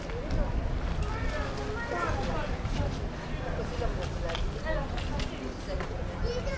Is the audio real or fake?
real